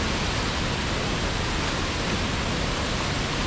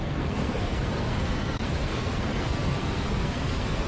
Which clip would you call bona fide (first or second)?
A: first